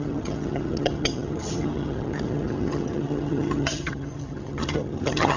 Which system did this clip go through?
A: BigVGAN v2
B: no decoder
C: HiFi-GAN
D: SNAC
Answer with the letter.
C